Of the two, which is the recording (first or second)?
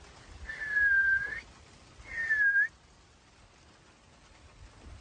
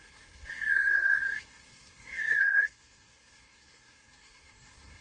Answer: first